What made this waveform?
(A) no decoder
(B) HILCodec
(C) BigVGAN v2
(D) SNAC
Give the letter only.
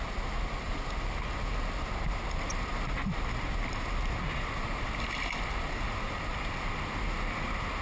A